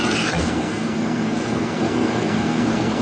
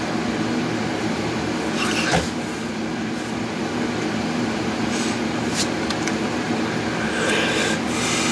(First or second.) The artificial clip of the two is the first